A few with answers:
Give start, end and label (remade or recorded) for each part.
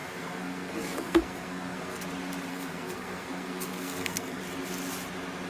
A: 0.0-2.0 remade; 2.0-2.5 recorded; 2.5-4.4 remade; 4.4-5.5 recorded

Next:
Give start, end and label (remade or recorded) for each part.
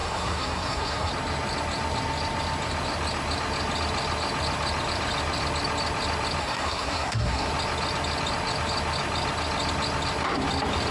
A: 0.0-1.1 remade; 1.1-6.4 recorded; 6.4-7.5 remade; 7.5-10.9 recorded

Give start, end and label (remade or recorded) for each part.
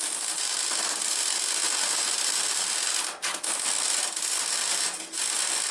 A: 0.0-5.7 recorded